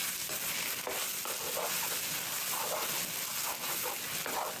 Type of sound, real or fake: real